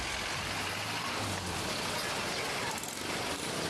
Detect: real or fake real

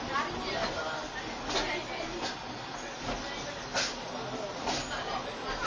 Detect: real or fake real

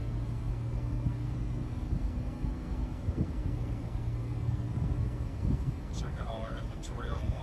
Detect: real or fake fake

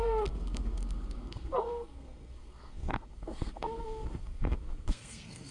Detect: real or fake fake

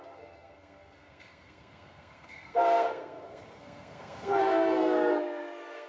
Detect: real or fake fake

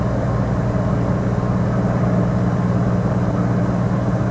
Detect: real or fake real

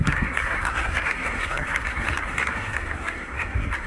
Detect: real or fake fake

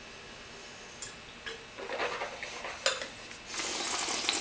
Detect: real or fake real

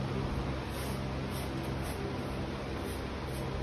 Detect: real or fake real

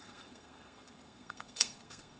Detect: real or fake fake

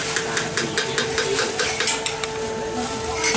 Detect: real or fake real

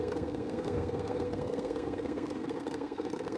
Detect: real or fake fake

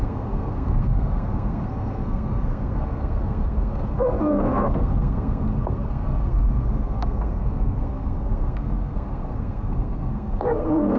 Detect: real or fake fake